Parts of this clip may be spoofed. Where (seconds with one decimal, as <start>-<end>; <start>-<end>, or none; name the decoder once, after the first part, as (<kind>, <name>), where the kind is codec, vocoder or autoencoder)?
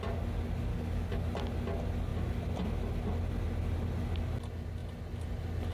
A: 0.7-1.2 (codec, DAC)